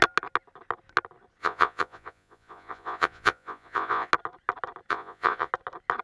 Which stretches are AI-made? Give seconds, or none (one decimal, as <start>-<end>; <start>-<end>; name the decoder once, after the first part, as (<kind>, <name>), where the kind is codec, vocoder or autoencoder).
1.4-4.1 (vocoder, Vocos); 4.9-5.5